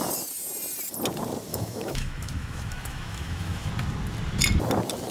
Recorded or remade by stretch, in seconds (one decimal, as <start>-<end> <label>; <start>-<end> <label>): 0.0-1.5 recorded; 1.5-3.7 remade; 3.7-5.1 recorded